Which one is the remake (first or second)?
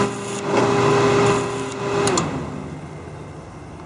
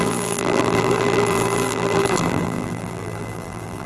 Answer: second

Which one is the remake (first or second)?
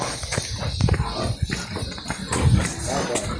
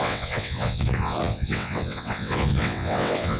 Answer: second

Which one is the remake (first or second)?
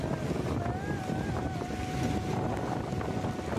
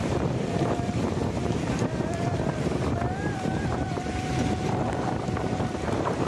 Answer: second